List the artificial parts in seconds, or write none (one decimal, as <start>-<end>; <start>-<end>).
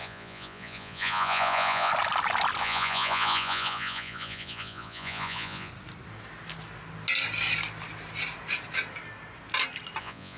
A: 0.0-1.9; 2.6-5.7; 10.0-10.4